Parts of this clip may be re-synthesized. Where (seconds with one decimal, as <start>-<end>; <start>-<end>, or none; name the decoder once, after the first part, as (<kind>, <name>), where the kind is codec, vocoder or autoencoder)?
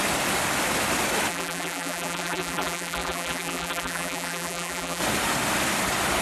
1.3-5.0 (vocoder, BigVGAN v2)